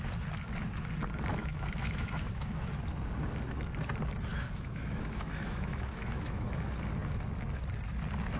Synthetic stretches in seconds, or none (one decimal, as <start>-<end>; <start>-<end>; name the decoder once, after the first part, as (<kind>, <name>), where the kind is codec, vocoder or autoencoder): 1.4-2.7 (autoencoder, DAC-VAE); 4.3-6.5